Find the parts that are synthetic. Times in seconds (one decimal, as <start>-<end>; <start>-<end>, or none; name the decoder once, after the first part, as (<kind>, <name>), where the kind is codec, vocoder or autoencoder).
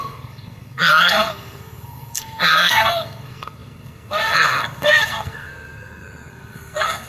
0.0-7.1 (codec, SNAC)